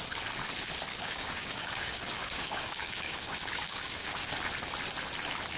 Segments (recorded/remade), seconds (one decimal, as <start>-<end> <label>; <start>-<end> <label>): 0.0-0.9 recorded; 0.9-4.3 remade; 4.3-5.6 recorded